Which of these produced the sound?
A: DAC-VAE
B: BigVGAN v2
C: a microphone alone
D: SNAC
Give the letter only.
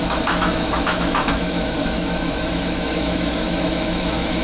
A